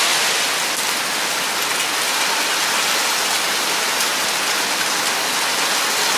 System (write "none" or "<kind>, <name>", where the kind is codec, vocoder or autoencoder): none